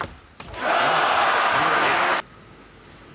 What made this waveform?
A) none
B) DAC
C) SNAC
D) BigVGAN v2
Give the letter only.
A